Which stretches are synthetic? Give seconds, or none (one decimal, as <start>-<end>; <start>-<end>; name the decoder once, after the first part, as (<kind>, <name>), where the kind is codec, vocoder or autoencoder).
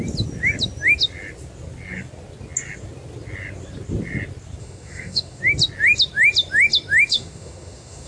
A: 4.6-5.4 (autoencoder, DAC-VAE); 7.1-8.1